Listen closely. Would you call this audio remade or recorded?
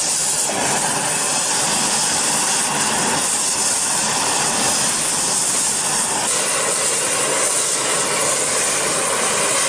remade